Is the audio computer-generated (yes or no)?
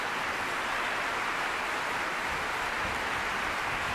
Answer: yes